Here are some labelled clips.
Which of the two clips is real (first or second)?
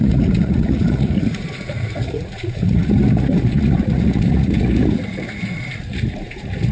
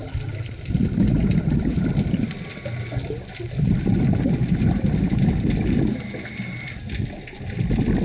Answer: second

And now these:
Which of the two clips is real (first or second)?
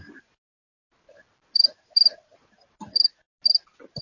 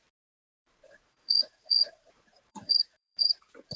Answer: first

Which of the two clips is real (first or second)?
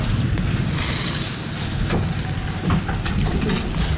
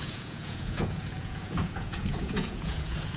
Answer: first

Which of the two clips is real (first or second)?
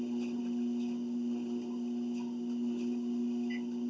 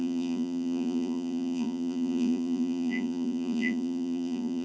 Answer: first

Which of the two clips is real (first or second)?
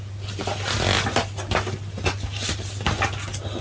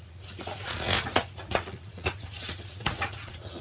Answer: first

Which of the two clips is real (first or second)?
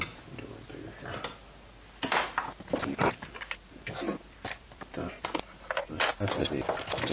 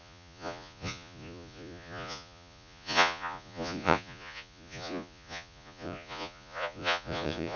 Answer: first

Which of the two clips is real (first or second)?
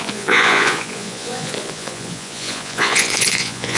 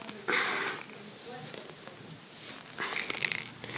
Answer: second